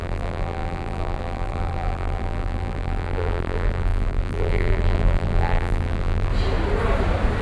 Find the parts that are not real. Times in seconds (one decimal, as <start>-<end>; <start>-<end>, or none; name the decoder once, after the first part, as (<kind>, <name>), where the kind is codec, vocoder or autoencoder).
0.0-6.3 (vocoder, BigVGAN v2)